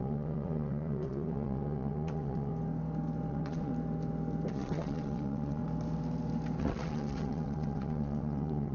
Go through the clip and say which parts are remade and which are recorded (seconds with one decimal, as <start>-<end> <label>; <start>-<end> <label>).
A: 0.0-2.5 remade; 2.5-3.3 recorded; 3.3-3.7 remade; 3.7-4.5 recorded; 4.5-5.6 remade; 5.6-6.6 recorded; 6.6-8.7 remade